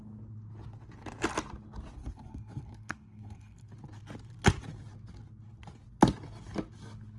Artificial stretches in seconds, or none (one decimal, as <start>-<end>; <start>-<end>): 2.0-3.7